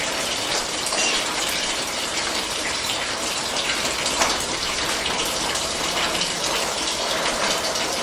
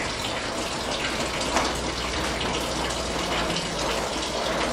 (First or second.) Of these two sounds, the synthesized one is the first